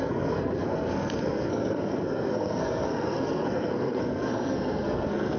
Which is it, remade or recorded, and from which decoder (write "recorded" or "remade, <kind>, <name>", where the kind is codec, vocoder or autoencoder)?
remade, codec, SNAC